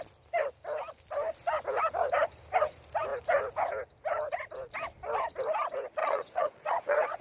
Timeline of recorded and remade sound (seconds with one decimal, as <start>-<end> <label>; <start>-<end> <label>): 0.0-6.0 recorded; 6.0-7.2 remade